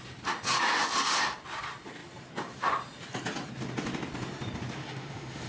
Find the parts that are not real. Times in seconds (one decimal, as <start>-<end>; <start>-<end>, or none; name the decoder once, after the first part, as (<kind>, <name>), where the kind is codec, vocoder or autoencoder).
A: 4.8-5.5 (autoencoder, DAC-VAE)